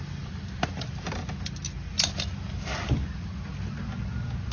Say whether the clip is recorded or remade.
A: recorded